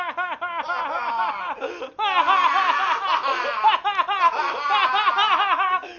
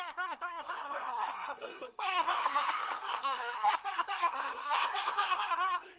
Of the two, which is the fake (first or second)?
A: second